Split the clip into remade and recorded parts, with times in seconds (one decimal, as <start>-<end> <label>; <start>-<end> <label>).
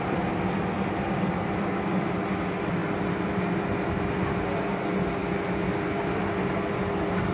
0.0-7.3 recorded